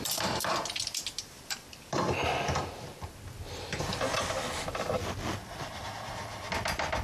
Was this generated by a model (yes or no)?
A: yes